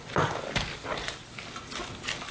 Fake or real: real